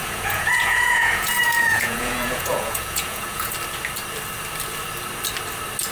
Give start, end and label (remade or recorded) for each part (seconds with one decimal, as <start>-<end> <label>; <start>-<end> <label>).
0.0-3.5 remade; 3.5-5.9 recorded